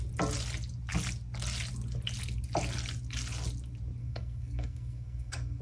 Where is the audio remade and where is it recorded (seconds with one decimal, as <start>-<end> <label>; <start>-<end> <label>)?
0.0-4.0 recorded; 4.0-5.6 remade